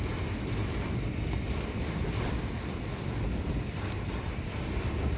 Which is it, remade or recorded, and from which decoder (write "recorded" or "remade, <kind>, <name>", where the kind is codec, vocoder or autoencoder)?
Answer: remade, vocoder, BigVGAN v2